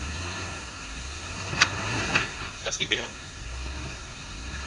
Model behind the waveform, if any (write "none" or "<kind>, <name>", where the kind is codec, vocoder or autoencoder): codec, SNAC